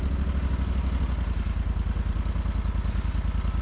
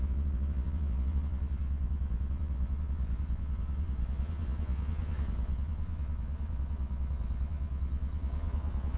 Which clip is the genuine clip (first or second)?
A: first